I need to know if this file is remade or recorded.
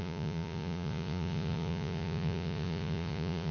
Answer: remade